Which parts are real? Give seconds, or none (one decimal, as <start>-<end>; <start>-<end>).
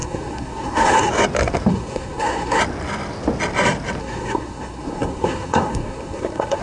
1.1-1.7; 2.6-4.0